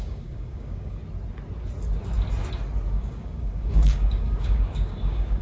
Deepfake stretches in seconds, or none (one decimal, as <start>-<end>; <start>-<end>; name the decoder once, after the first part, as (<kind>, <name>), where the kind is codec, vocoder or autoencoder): 0.0-1.0 (codec, DAC); 2.9-5.4